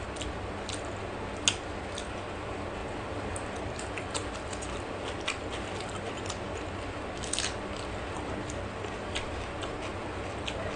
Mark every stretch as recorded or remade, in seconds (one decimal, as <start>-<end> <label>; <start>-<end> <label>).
0.0-10.8 recorded